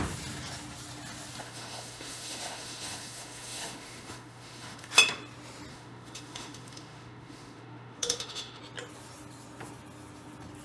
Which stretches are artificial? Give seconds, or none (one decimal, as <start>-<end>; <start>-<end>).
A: 1.4-4.9; 5.7-8.6